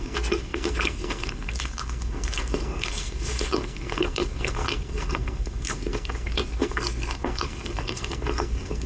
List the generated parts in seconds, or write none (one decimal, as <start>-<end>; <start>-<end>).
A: 0.0-8.9